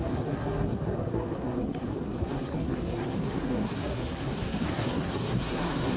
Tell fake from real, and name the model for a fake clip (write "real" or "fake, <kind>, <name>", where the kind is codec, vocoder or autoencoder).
fake, codec, SNAC